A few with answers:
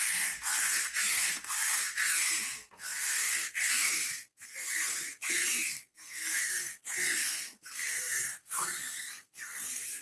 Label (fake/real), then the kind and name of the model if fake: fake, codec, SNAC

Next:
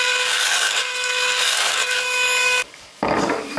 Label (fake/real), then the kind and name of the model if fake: fake, codec, DAC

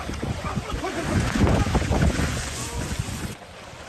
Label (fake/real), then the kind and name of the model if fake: fake, vocoder, Vocos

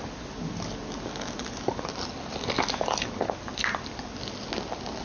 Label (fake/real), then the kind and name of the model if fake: real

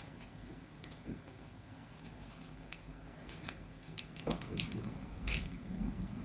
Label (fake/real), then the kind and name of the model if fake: fake, codec, SNAC